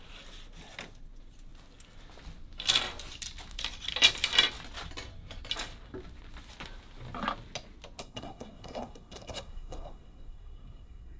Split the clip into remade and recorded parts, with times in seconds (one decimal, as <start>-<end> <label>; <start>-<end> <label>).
0.0-8.0 recorded; 8.0-11.2 remade